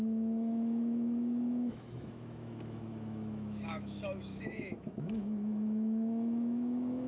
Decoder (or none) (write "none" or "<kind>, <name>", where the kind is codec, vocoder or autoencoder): autoencoder, DAC-VAE